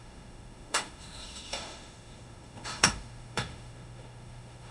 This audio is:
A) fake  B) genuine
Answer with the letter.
A